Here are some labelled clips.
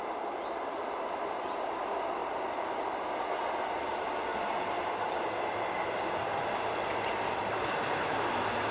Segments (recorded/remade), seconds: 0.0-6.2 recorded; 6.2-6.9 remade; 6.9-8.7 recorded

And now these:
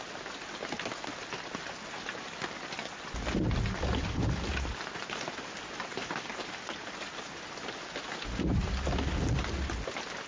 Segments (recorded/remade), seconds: 0.0-10.3 recorded